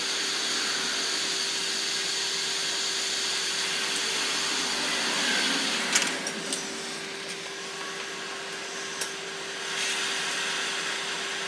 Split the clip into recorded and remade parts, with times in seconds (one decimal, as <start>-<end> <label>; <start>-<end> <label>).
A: 0.0-11.5 recorded